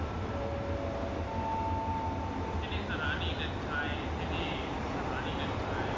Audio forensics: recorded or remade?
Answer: recorded